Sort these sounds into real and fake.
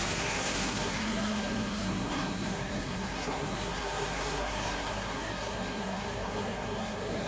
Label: fake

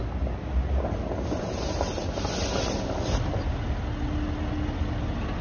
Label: real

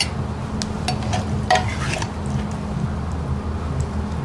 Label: real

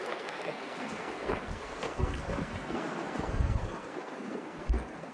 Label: fake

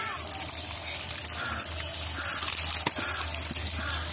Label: real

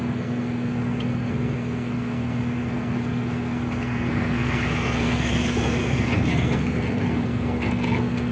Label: fake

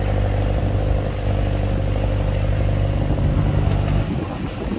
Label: real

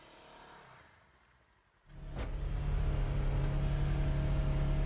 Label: real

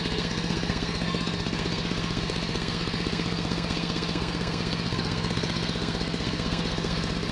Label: fake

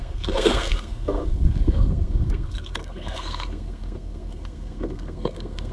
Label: fake